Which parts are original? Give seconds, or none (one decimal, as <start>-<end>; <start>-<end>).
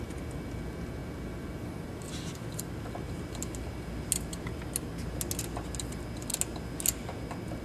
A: 0.0-7.6